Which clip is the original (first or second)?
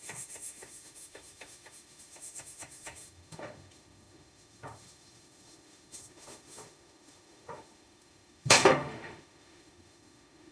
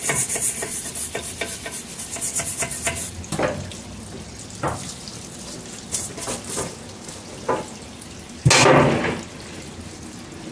second